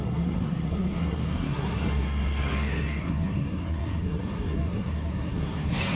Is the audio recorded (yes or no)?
no